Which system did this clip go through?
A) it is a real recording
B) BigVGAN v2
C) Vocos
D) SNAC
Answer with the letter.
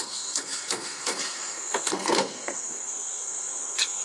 D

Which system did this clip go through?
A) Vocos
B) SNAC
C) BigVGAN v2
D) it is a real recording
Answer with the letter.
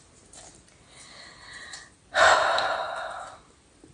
D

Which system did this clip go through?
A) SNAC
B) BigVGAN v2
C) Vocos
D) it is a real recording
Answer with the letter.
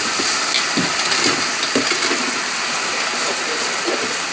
D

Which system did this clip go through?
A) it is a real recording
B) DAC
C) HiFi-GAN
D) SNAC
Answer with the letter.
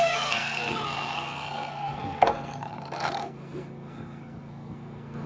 D